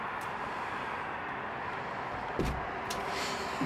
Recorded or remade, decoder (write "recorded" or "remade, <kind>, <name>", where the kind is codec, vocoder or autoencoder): recorded